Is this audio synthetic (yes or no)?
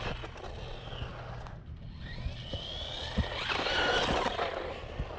no